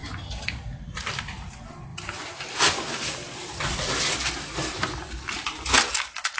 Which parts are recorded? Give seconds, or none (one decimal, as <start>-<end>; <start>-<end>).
0.0-6.4